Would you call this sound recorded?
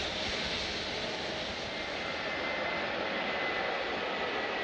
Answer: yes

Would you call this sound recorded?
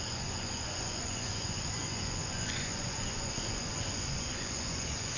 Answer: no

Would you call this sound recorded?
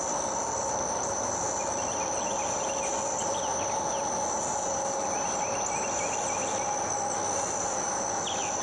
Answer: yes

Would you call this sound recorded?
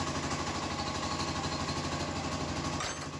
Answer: yes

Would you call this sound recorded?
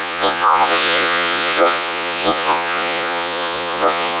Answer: no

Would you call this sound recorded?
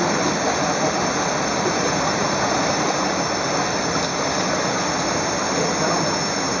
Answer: yes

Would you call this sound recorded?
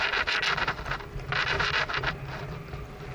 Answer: yes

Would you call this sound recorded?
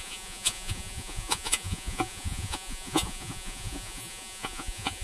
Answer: no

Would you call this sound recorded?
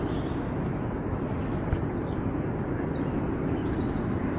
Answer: yes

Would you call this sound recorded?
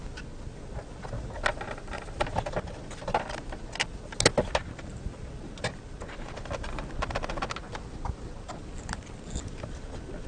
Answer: yes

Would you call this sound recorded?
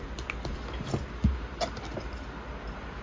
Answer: yes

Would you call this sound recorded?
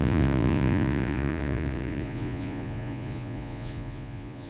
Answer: no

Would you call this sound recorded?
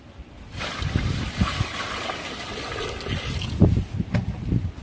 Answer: yes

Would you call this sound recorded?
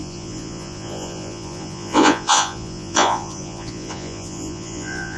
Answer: no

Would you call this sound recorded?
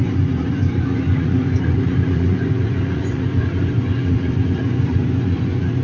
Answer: no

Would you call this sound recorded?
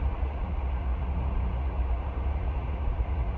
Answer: no